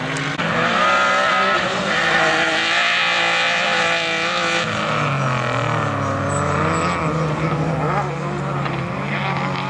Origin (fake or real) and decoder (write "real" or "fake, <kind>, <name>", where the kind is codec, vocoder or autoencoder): real